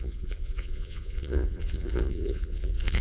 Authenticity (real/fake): fake